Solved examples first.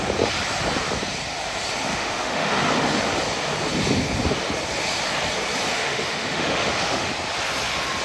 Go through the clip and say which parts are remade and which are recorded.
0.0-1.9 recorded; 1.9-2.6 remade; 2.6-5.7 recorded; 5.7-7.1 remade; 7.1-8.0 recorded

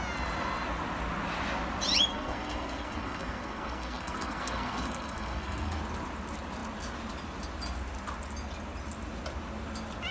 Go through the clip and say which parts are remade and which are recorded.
0.0-2.1 recorded; 2.1-5.8 remade; 5.8-10.1 recorded

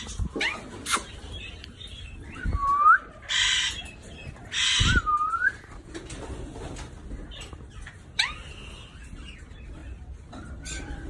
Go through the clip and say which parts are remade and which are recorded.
0.0-0.5 remade; 0.5-1.5 recorded; 1.5-2.6 remade; 2.6-7.4 recorded; 7.4-11.1 remade

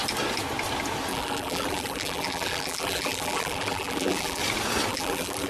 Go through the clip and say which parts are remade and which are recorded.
0.0-1.1 recorded; 1.1-4.4 remade; 4.4-4.9 recorded; 4.9-5.5 remade

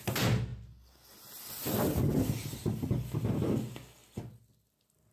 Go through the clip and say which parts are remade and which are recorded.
0.0-5.1 recorded

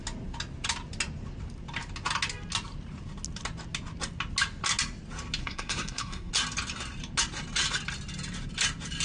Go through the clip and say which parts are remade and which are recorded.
0.0-5.4 recorded; 5.4-6.3 remade; 6.3-9.0 recorded